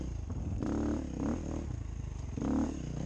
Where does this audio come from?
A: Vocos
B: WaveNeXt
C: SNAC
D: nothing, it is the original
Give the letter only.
D